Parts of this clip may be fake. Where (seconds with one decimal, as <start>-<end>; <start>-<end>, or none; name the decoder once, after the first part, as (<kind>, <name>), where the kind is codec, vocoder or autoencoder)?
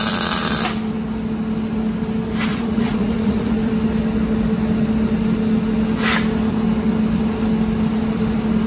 2.5-3.5 (vocoder, Vocos)